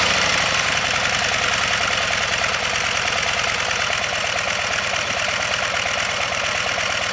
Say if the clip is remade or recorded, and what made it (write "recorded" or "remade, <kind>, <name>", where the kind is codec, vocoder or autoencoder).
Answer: recorded